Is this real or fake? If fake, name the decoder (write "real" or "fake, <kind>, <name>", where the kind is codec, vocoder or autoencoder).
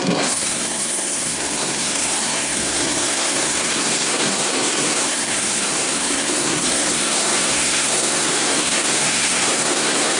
fake, codec, SNAC